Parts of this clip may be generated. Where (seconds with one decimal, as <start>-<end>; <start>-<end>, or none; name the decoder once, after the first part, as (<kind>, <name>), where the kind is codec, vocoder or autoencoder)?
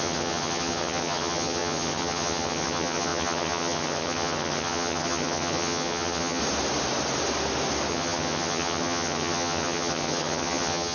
0.0-6.4 (vocoder, HiFi-GAN); 7.9-10.9